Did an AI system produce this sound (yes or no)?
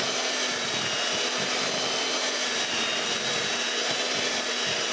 no